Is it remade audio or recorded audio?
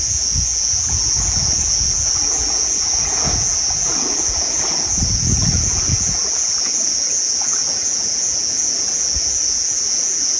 remade